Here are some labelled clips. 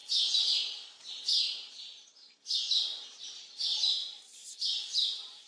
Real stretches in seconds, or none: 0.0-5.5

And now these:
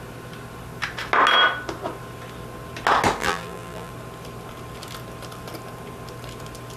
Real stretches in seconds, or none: 0.0-3.2; 3.9-6.8

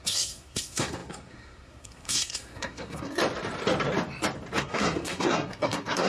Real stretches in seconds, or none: 3.2-4.6